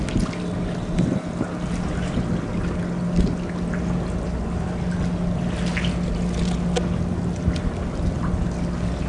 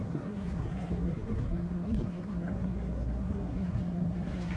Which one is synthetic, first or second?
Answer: second